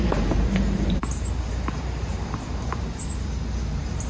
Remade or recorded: remade